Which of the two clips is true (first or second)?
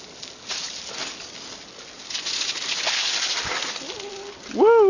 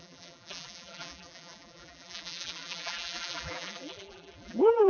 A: first